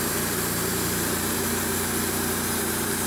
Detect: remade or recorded remade